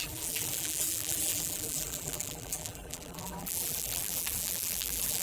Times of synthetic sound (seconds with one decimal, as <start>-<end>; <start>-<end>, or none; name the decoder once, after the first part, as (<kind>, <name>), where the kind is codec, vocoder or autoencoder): 0.0-5.2 (vocoder, BigVGAN v2)